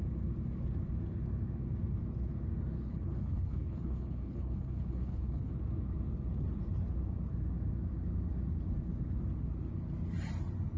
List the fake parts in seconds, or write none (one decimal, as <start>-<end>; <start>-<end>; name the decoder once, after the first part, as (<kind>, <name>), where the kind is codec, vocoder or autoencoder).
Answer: 2.9-5.5 (codec, HILCodec)